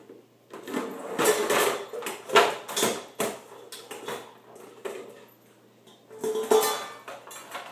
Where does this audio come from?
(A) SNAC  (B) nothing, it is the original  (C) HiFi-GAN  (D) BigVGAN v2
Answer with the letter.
B